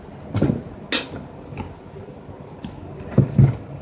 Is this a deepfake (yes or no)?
no